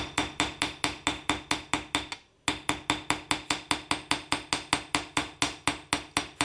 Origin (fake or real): real